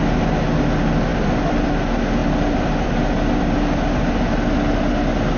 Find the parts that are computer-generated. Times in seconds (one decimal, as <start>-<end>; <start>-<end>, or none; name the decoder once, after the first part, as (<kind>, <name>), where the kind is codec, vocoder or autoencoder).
1.1-1.7 (vocoder, BigVGAN v2); 2.2-4.1